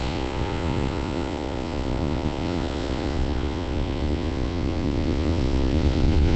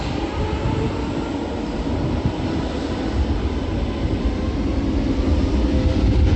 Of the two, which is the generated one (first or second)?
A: first